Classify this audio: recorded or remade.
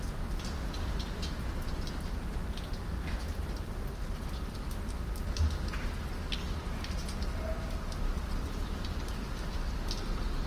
recorded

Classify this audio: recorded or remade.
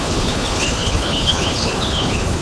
remade